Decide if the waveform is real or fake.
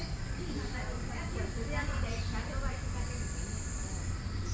real